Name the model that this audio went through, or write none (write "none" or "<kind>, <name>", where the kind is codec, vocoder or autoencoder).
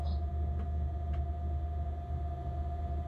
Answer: none